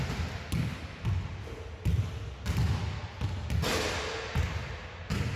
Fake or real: real